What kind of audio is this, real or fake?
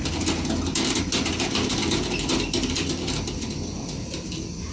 real